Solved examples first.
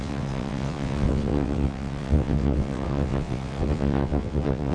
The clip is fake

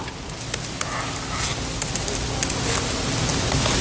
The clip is real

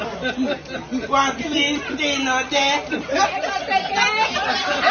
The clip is real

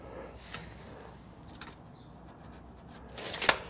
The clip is real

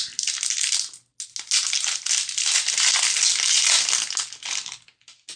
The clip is real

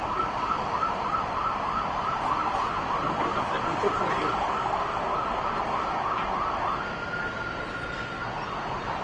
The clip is real